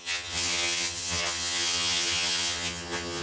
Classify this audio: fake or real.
fake